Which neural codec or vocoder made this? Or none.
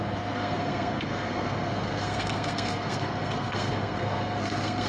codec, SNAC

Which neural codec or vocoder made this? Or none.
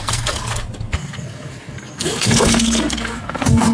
codec, SNAC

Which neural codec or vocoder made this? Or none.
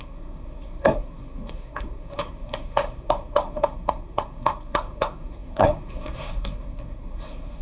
codec, SNAC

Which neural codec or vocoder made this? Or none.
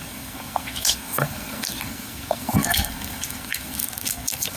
codec, SNAC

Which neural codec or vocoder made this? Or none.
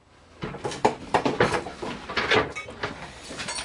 none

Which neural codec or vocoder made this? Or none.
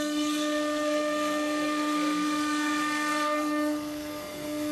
codec, SNAC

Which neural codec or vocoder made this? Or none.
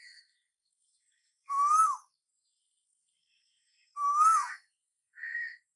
codec, SNAC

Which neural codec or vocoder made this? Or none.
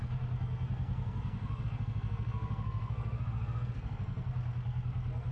codec, SNAC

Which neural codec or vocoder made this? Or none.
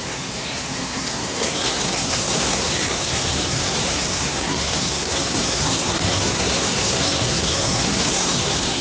codec, SNAC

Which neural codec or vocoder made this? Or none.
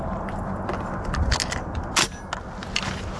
none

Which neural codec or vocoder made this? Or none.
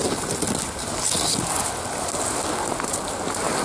none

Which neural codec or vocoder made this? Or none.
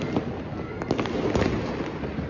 none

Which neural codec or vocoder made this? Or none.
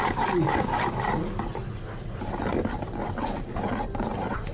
none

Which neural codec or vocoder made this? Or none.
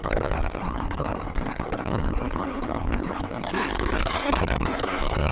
codec, SNAC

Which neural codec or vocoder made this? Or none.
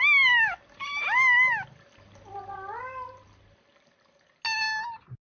none